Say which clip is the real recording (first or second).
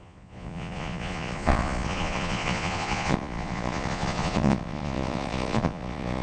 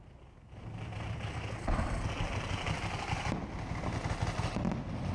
second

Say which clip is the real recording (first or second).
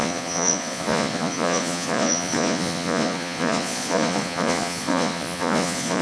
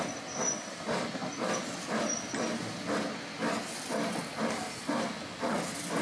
second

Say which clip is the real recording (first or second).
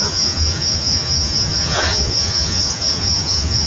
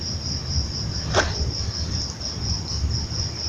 second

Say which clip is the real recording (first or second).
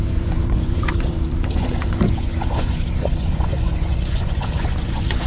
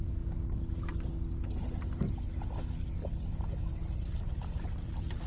second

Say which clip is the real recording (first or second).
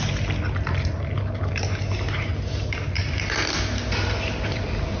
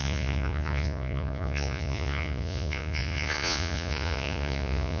first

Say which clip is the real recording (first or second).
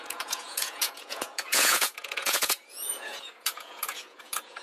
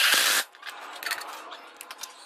second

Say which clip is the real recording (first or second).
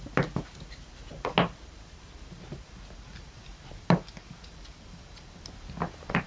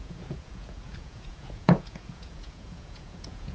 first